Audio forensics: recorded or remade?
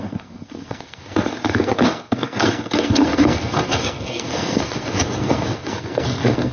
remade